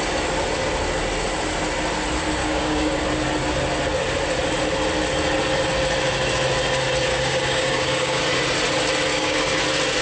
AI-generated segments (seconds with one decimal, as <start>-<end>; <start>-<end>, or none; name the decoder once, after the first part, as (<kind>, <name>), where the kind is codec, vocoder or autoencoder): 2.4-3.0 (codec, DAC); 7.1-8.2; 9.1-9.6